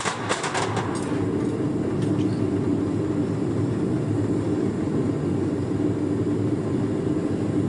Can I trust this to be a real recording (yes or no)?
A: yes